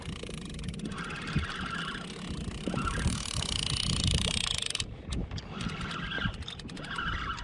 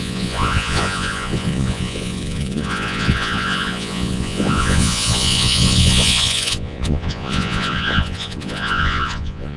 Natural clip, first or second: first